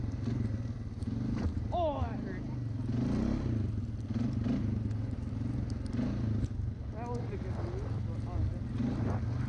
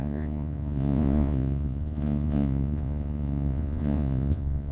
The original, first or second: first